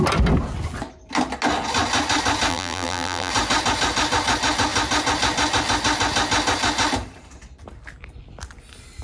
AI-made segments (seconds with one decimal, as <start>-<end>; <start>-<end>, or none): 2.5-3.3